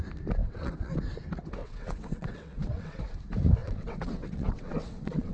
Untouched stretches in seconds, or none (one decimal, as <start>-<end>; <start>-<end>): 0.0-0.4; 0.9-1.6; 3.0-3.6